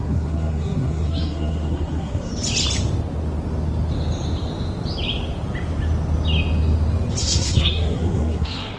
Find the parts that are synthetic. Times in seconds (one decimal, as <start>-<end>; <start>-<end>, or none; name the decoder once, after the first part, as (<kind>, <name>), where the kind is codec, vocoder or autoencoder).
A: 0.0-2.3 (codec, SNAC); 7.2-8.8